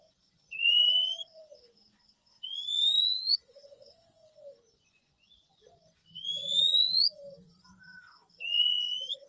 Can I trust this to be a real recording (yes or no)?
no